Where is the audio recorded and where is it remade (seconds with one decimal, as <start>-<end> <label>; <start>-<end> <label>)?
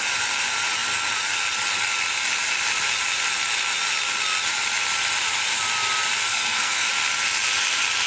0.0-6.3 recorded; 6.3-6.9 remade; 6.9-8.1 recorded